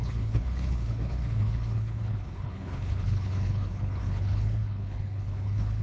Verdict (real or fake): fake